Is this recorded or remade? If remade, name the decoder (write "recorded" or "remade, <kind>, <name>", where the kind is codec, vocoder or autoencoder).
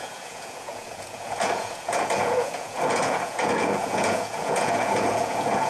remade, vocoder, Vocos